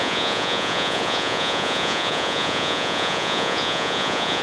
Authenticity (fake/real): fake